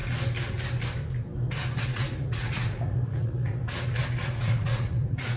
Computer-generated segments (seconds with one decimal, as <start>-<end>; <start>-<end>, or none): 1.8-3.6; 4.2-5.4